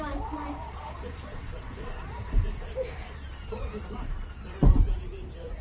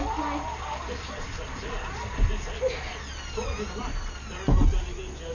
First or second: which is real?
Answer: second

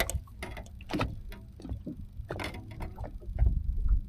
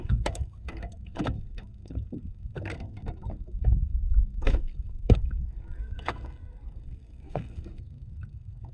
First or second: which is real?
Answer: first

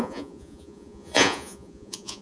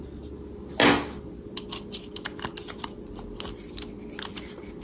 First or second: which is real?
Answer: second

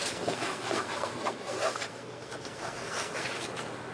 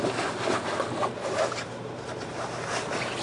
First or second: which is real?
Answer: second